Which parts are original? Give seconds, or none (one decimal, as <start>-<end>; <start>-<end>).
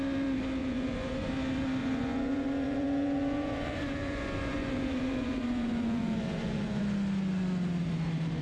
0.0-0.6; 1.3-1.8; 6.8-8.4